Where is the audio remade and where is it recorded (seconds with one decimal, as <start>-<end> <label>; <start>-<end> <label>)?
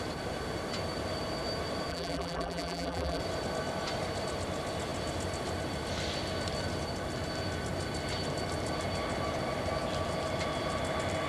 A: 0.0-1.9 recorded; 1.9-3.2 remade; 3.2-11.3 recorded